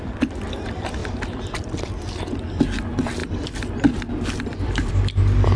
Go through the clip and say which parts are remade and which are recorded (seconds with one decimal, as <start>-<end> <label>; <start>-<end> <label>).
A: 0.0-1.0 recorded; 1.0-1.8 remade; 1.8-3.2 recorded; 3.2-4.9 remade; 4.9-5.6 recorded

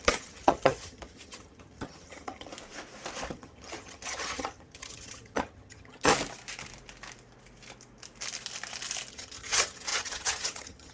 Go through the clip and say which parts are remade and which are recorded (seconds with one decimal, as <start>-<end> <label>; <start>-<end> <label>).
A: 0.0-2.5 remade; 2.5-3.3 recorded; 3.3-6.1 remade; 6.1-9.1 recorded; 9.1-10.9 remade

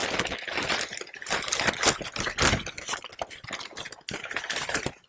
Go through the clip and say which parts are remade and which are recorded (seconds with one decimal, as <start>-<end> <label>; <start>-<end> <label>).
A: 0.0-5.1 recorded